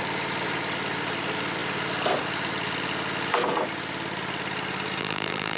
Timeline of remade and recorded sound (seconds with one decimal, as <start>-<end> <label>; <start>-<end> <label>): 0.0-5.0 recorded; 5.0-5.6 remade